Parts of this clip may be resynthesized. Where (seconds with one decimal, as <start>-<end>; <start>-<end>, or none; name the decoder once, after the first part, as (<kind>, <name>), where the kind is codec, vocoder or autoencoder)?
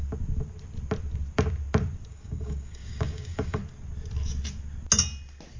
2.1-3.6 (codec, DAC)